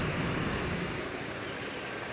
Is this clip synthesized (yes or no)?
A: no